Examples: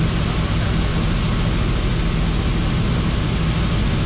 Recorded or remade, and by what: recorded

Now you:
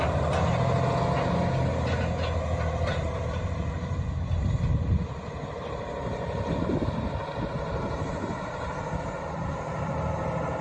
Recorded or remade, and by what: recorded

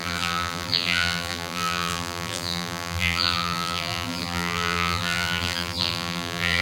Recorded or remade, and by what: remade, vocoder, BigVGAN v2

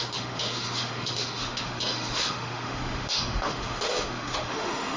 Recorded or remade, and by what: remade, autoencoder, DAC-VAE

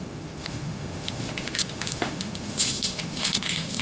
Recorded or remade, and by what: remade, autoencoder, DAC-VAE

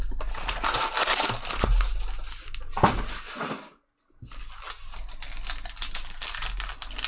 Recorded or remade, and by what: recorded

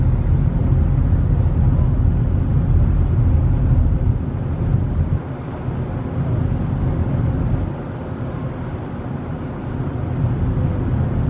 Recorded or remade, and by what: recorded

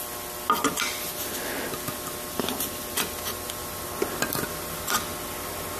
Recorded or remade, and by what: recorded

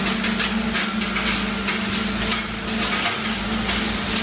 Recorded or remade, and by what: recorded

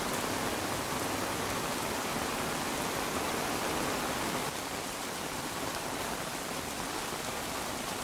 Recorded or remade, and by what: recorded